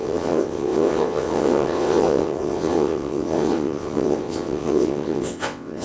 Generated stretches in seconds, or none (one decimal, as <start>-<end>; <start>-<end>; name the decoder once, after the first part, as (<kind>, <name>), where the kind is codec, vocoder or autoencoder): 0.0-5.8 (vocoder, WaveNeXt)